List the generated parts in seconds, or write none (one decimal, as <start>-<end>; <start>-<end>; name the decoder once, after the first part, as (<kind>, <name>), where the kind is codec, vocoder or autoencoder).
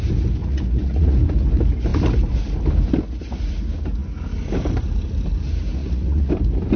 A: 0.4-1.2 (vocoder, Vocos); 5.8-6.3